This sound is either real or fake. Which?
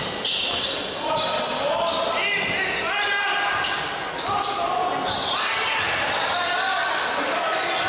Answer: real